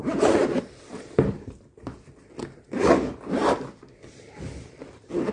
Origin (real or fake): fake